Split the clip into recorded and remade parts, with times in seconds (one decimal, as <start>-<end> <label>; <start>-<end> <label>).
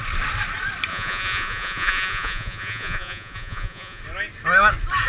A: 0.0-0.9 recorded; 0.9-4.0 remade; 4.0-5.1 recorded